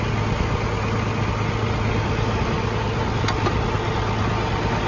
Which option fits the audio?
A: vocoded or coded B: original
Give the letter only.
B